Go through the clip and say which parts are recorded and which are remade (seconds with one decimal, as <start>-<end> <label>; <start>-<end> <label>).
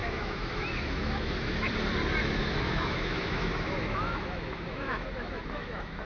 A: 0.0-1.7 remade; 1.7-2.2 recorded; 2.2-6.0 remade